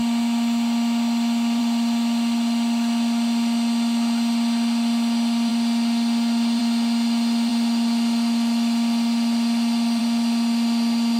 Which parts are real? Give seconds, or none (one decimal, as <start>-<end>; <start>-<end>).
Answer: 0.0-11.2